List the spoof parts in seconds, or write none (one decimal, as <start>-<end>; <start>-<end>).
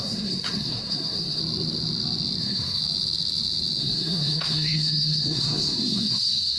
0.0-1.4; 2.4-2.8; 3.8-6.6